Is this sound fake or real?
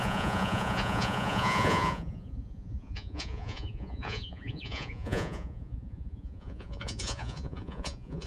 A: fake